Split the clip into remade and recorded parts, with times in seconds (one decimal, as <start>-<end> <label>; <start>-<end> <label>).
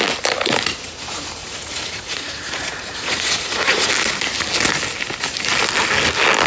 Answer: 0.0-1.4 recorded; 1.4-3.9 remade; 3.9-6.5 recorded